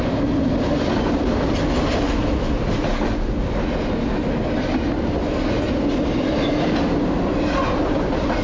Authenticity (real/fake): real